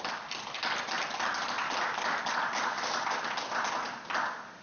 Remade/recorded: recorded